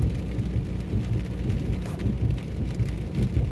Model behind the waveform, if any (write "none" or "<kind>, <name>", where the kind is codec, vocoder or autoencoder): none